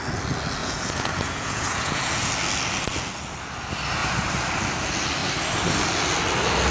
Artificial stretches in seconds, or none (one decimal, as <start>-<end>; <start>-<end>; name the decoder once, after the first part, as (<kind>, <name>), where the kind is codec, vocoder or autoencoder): 0.6-2.3 (vocoder, Vocos)